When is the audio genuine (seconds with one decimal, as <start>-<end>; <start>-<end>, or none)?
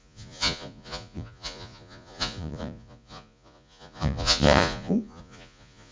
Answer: none